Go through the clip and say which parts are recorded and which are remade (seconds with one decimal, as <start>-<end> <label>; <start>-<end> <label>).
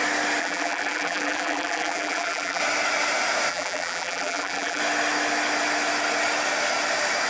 0.0-0.4 recorded; 0.4-2.6 remade; 2.6-3.5 recorded; 3.5-4.8 remade; 4.8-7.3 recorded